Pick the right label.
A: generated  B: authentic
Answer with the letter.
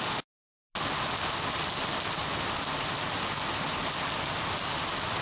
B